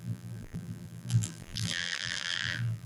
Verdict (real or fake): fake